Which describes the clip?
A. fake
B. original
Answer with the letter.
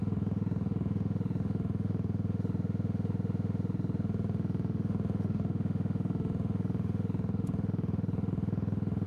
A